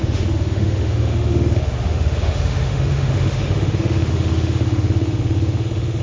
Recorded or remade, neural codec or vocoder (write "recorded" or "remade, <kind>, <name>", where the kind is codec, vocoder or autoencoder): remade, autoencoder, DAC-VAE